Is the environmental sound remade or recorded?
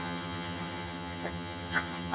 remade